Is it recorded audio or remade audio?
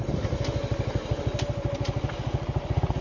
recorded